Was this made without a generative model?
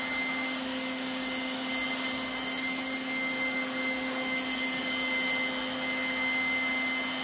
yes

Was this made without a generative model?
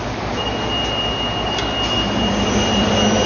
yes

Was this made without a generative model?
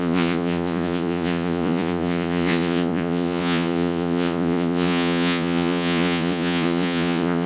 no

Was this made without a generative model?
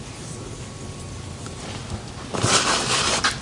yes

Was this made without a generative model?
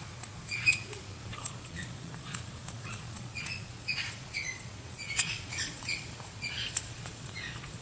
no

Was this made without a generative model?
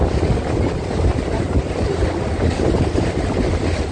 yes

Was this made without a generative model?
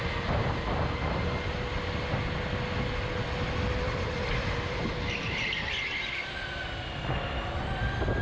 yes